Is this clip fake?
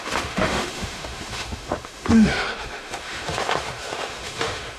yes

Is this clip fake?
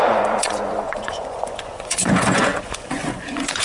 yes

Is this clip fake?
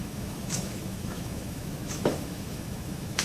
yes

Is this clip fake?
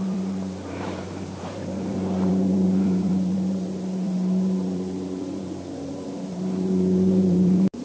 yes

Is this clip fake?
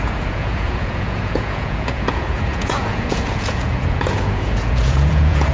yes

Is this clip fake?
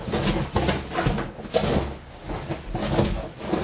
no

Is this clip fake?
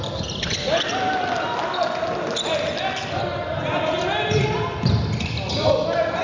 no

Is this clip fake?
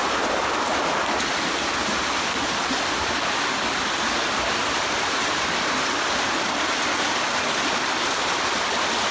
no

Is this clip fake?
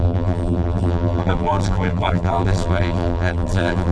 yes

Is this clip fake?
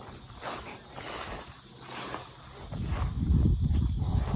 no